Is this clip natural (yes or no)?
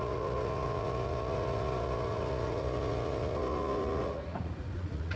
no